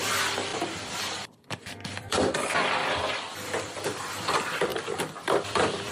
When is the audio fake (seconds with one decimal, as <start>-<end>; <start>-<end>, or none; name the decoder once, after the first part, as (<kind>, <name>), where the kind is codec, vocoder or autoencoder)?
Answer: 0.0-5.9 (vocoder, BigVGAN v2)